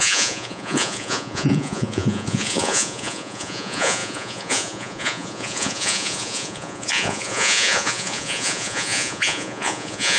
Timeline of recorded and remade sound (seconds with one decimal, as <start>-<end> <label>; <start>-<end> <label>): 0.0-10.2 remade